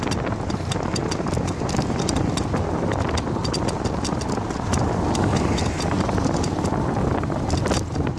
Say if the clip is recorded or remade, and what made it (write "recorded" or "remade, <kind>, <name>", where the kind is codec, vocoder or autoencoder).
recorded